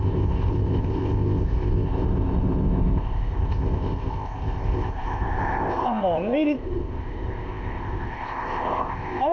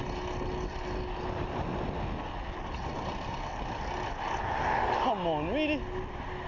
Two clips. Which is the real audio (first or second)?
second